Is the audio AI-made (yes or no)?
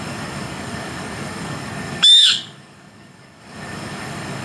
yes